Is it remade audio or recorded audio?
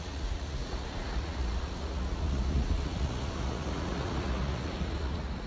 remade